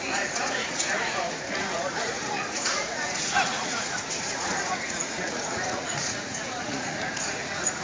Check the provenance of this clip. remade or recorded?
remade